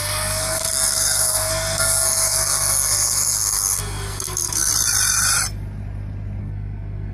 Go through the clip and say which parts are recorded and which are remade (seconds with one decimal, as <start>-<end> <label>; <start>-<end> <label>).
0.0-4.7 remade; 4.7-6.4 recorded; 6.4-7.1 remade